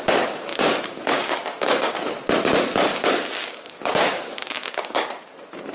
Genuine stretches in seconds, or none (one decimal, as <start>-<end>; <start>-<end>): 0.0-0.5; 1.9-2.9; 5.1-5.7